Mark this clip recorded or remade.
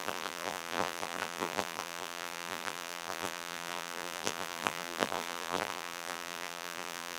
remade